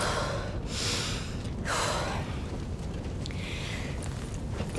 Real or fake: real